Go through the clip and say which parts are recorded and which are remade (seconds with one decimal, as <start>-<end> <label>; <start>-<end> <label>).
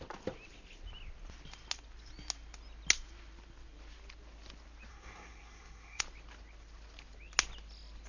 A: 0.0-4.9 recorded; 4.9-6.0 remade; 6.0-8.1 recorded